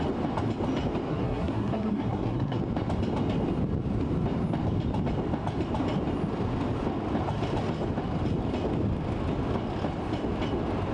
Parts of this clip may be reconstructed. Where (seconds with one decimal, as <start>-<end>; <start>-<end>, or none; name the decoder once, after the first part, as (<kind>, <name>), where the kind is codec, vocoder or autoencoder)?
1.1-2.6 (codec, SNAC)